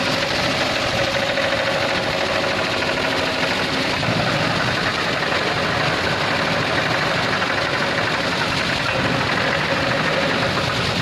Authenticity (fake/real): real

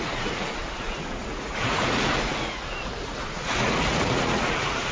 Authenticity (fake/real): fake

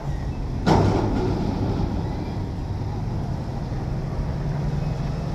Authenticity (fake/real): real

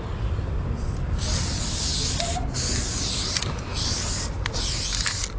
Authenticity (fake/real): real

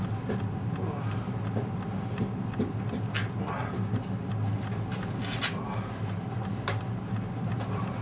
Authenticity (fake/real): real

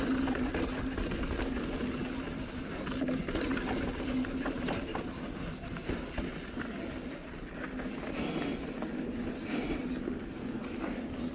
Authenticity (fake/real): real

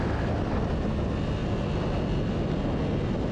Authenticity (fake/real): real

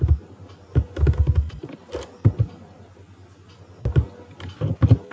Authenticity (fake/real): real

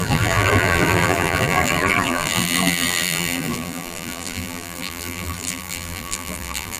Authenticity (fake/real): fake